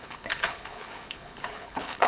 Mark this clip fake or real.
fake